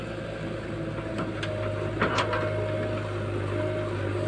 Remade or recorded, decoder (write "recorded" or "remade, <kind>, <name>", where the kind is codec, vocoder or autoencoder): recorded